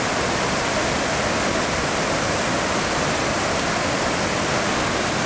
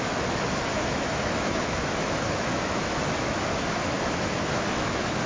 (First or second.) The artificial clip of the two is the second